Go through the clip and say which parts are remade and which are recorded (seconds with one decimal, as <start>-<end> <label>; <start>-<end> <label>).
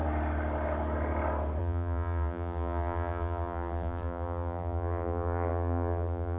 0.0-1.6 recorded; 1.6-6.4 remade